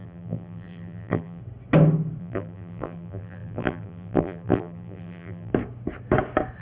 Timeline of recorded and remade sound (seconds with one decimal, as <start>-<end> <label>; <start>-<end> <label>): 0.0-1.4 remade; 1.4-2.2 recorded; 2.2-5.5 remade; 5.5-6.6 recorded